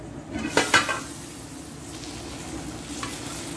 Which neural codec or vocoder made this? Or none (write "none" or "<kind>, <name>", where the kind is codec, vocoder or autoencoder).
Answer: none